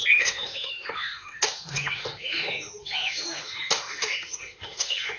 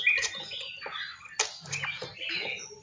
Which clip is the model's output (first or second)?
first